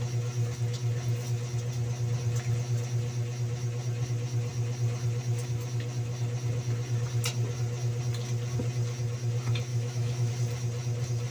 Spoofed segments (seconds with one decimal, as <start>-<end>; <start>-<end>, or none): 9.7-10.3